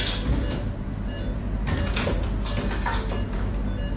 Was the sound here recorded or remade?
recorded